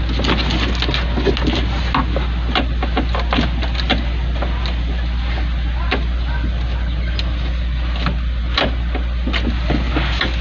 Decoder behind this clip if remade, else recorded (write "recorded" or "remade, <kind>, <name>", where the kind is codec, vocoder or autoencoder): recorded